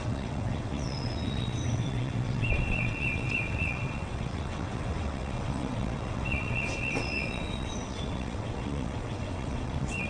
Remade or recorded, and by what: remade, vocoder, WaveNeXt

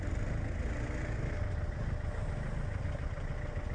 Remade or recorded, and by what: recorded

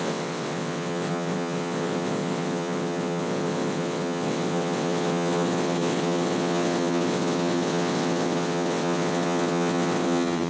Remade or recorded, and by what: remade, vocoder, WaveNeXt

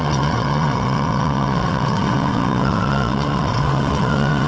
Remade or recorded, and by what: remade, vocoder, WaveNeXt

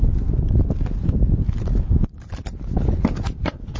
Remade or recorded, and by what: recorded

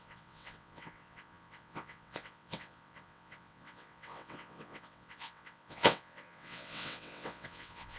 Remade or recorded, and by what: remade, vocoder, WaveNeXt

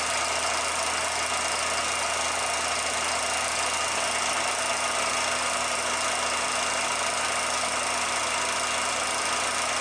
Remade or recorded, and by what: recorded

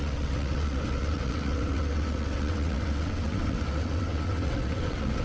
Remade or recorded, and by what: remade, vocoder, WaveNeXt